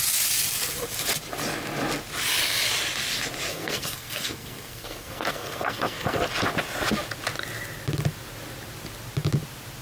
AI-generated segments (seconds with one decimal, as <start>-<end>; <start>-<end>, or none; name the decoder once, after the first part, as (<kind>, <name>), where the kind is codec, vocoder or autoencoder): 3.5-6.2 (codec, SNAC)